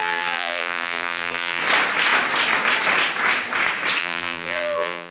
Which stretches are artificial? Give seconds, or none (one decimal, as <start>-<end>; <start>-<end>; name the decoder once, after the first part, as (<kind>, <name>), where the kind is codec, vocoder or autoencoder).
0.0-1.6 (vocoder, BigVGAN v2); 4.0-5.1